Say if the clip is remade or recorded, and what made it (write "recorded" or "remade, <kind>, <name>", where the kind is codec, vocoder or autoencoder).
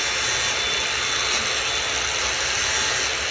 recorded